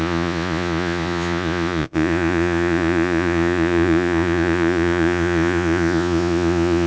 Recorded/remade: remade